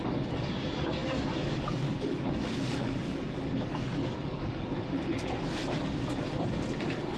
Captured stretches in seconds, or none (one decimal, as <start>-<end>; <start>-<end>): 5.6-6.8